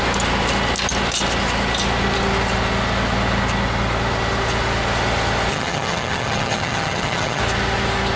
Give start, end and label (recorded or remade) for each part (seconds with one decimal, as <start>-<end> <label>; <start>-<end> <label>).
0.0-5.5 recorded; 5.5-7.4 remade; 7.4-8.2 recorded